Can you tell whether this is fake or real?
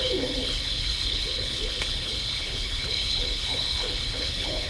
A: fake